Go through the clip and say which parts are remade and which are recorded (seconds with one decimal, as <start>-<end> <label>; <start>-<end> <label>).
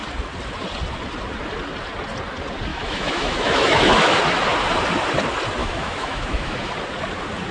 0.0-2.7 recorded; 2.7-4.2 remade; 4.2-5.6 recorded; 5.6-6.7 remade; 6.7-7.5 recorded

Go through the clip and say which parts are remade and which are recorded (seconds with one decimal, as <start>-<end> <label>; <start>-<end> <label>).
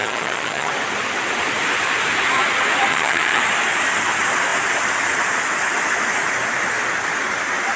0.0-0.7 remade; 0.7-2.9 recorded; 2.9-3.4 remade; 3.4-7.8 recorded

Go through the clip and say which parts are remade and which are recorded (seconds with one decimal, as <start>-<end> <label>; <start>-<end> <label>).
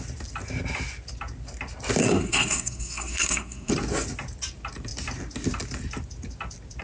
0.0-2.0 recorded; 2.0-3.7 remade; 3.7-6.8 recorded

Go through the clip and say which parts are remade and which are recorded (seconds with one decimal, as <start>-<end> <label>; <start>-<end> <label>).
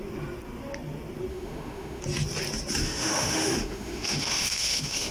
0.0-1.3 recorded; 1.3-2.0 remade; 2.0-2.8 recorded; 2.8-5.1 remade